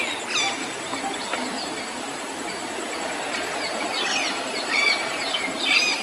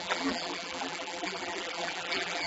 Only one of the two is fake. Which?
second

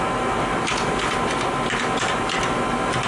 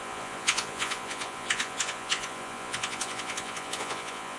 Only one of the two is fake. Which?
second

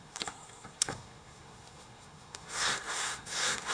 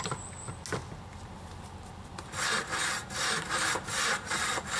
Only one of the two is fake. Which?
first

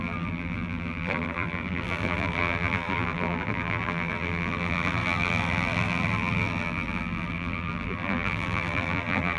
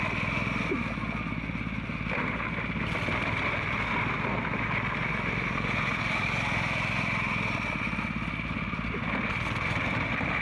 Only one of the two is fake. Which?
first